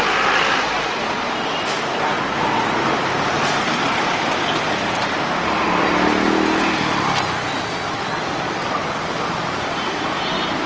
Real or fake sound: real